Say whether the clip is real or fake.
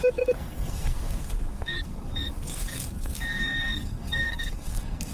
fake